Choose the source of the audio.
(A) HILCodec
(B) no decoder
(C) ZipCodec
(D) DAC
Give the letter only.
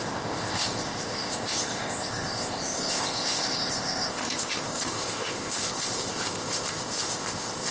C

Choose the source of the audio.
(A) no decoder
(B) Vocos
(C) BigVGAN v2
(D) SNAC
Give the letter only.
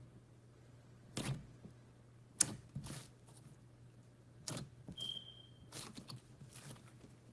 A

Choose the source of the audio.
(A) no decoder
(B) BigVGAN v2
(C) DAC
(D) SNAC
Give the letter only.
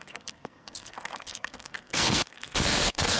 D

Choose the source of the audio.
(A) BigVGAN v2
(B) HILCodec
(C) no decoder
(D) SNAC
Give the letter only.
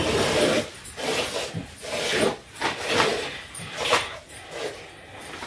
C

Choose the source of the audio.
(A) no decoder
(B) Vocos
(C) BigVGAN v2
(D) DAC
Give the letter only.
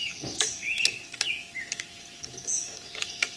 D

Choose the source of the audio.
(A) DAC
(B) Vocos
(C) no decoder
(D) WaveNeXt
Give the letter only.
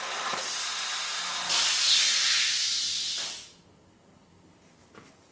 C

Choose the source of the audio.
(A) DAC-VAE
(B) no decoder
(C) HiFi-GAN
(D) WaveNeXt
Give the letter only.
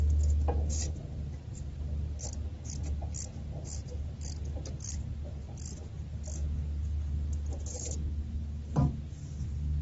B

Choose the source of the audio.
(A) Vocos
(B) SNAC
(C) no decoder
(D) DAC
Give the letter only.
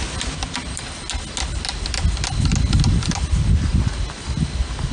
C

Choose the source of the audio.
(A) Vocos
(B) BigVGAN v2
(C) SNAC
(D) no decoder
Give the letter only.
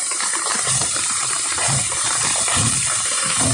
B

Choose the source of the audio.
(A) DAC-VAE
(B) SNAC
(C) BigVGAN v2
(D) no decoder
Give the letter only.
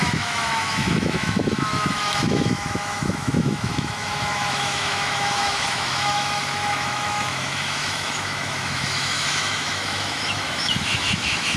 A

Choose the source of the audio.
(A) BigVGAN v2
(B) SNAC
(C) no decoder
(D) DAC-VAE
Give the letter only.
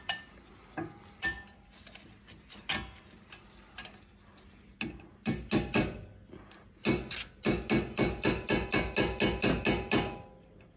C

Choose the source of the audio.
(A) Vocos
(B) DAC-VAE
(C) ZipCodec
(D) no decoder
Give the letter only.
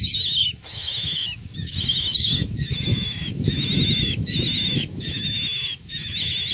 B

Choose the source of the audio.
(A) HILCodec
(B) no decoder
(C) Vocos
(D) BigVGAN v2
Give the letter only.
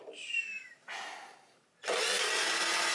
B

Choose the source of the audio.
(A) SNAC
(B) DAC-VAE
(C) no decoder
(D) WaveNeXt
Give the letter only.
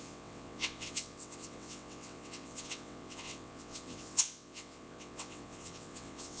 D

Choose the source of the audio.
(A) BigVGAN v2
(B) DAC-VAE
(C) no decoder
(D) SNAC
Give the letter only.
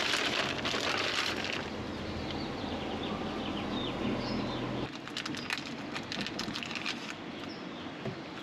C